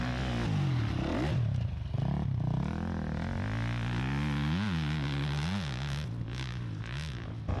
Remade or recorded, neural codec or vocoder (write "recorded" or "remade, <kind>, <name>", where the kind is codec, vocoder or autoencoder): recorded